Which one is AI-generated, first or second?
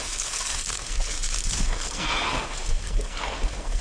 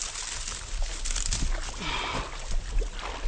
first